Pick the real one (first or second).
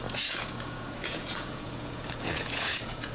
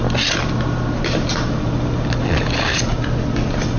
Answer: second